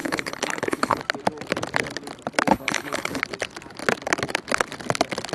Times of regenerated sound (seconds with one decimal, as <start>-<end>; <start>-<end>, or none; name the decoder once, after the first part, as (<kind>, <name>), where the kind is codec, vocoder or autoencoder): 0.0-1.0 (codec, HILCodec); 2.5-3.2